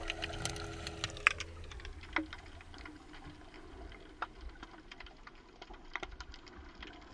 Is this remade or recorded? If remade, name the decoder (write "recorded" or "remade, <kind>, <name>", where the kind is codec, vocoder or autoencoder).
recorded